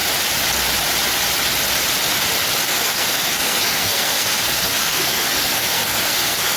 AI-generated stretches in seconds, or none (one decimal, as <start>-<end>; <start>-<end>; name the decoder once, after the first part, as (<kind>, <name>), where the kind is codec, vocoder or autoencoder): 2.6-6.6 (codec, SNAC)